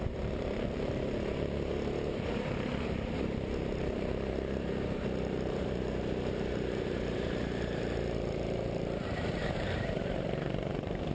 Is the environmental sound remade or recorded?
remade